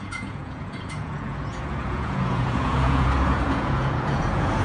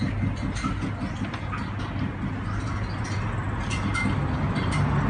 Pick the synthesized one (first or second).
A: first